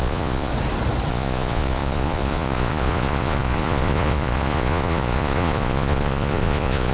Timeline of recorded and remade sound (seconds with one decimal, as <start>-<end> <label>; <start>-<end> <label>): 0.0-0.5 remade; 0.5-1.1 recorded; 1.1-6.9 remade